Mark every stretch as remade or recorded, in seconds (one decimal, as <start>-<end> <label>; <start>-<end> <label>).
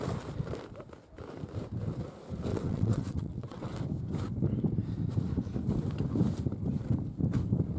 0.0-2.5 recorded; 2.5-3.8 remade; 3.8-7.8 recorded